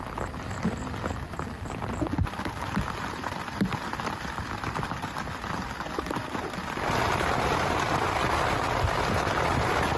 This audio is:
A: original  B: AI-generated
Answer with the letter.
A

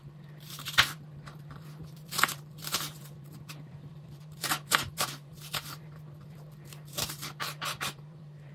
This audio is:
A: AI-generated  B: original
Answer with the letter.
A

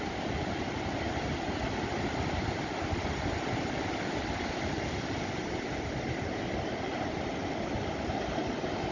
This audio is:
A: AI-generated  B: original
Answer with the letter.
B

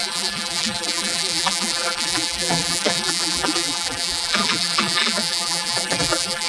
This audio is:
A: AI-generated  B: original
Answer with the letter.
A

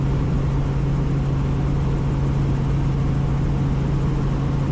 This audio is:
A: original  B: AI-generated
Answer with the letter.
A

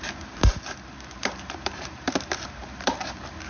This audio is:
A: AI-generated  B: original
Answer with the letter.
A